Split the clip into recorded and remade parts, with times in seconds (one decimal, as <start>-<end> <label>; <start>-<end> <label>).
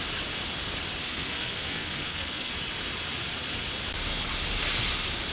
0.0-1.0 recorded; 1.0-2.5 remade; 2.5-5.3 recorded